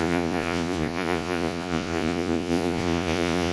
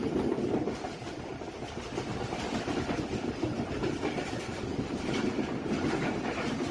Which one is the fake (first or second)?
first